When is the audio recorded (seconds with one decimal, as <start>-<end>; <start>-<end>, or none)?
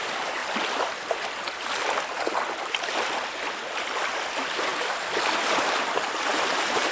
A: 0.0-6.3